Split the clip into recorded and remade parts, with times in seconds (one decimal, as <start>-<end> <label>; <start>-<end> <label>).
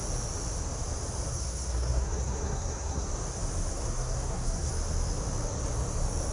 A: 0.0-1.3 recorded; 1.3-3.1 remade; 3.1-3.7 recorded; 3.7-4.7 remade; 4.7-6.3 recorded